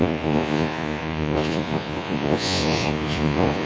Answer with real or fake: fake